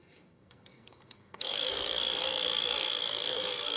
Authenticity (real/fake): fake